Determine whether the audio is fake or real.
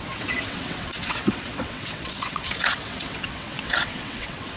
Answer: fake